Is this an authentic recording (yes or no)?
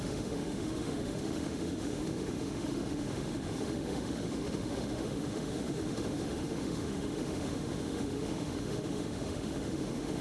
no